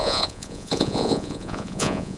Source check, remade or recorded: remade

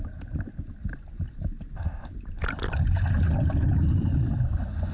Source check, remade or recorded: recorded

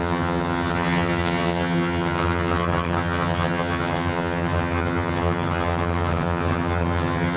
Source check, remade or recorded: remade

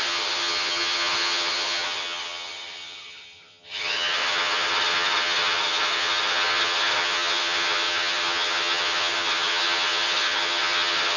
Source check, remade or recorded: remade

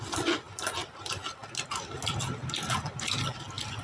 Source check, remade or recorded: recorded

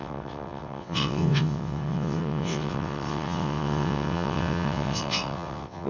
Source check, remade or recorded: remade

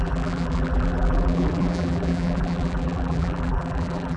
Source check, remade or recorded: remade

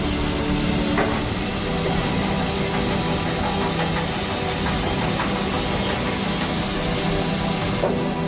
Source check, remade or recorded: recorded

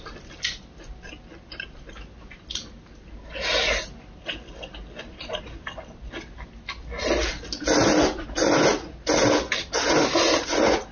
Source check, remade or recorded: recorded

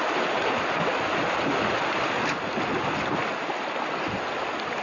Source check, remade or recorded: recorded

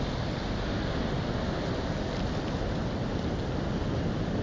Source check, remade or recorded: recorded